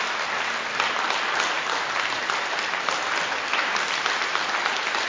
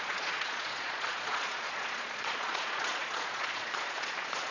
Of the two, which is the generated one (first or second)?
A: second